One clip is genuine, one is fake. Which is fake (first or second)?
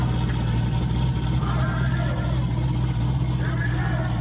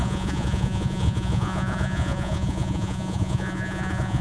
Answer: second